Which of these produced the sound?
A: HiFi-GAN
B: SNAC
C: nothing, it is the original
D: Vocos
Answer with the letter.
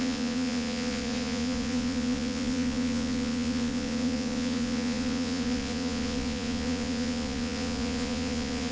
D